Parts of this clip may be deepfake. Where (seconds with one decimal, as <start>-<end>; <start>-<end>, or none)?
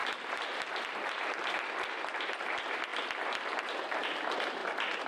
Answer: 0.0-2.9; 4.0-5.1